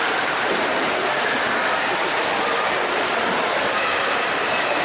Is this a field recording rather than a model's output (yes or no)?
yes